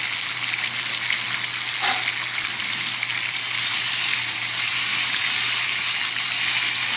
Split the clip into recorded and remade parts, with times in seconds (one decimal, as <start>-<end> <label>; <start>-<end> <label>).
0.0-3.6 recorded; 3.6-6.0 remade; 6.0-7.0 recorded